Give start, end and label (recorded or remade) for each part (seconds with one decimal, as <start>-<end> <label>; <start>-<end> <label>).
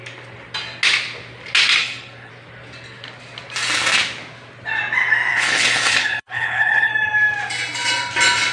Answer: 0.0-1.8 recorded; 1.8-2.3 remade; 2.3-5.3 recorded; 5.3-6.9 remade; 6.9-8.5 recorded